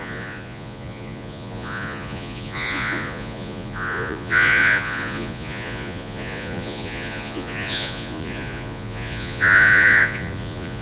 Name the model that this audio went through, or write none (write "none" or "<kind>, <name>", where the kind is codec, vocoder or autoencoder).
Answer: vocoder, Vocos